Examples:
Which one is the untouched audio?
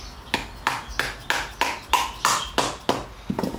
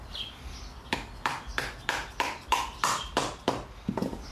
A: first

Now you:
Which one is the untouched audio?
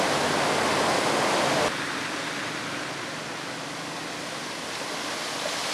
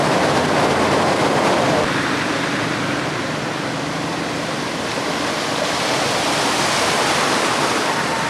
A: first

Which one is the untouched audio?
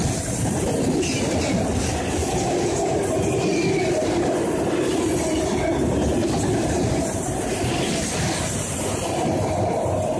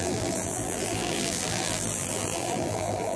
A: first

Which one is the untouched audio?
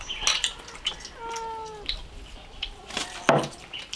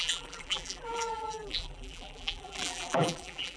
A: first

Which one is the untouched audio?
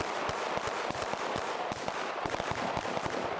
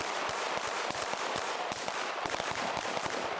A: first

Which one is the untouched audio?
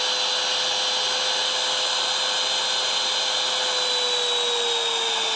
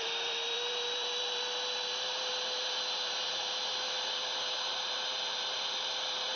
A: first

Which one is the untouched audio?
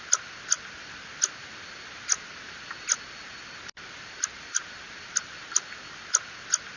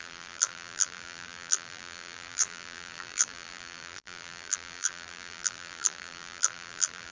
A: first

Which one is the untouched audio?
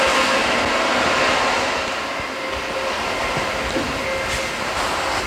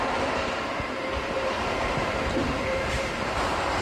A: first